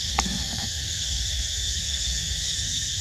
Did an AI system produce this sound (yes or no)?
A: yes